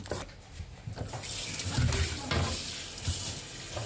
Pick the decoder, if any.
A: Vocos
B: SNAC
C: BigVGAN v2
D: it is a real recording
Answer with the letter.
D